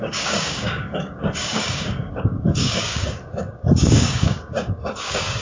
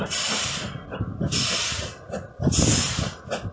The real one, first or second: second